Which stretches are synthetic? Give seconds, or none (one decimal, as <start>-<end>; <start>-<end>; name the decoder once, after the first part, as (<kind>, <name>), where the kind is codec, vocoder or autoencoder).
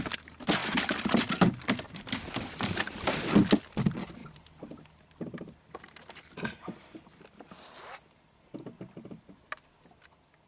none